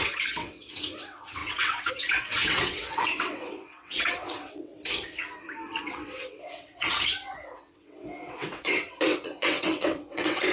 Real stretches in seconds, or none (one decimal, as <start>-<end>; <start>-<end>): 4.7-5.8